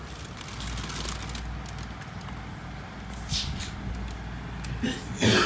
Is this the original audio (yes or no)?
yes